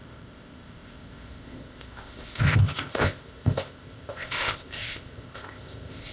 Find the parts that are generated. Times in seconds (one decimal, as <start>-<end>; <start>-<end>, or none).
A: 0.0-6.1